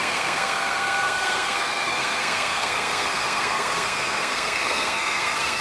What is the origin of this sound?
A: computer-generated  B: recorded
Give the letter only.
A